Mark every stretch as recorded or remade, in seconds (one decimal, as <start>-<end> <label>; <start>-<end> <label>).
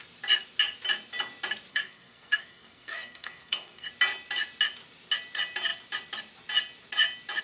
0.0-1.7 recorded; 1.7-3.9 remade; 3.9-7.4 recorded